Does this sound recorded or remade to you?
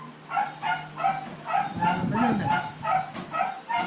recorded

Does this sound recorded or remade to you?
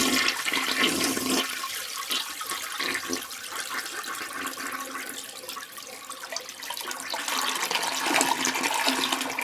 recorded